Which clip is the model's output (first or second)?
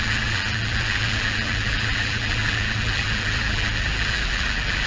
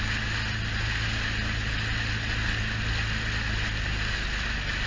first